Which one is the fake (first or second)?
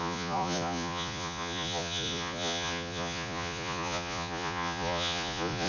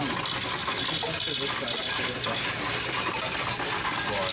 first